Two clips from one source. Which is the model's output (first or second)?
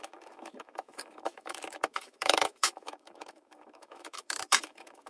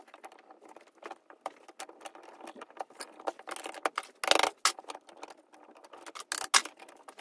first